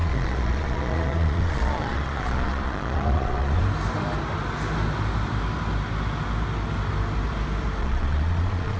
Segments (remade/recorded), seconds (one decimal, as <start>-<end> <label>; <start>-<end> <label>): 0.0-3.6 remade; 3.6-7.8 recorded; 7.8-8.8 remade